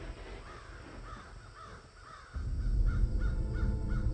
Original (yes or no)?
yes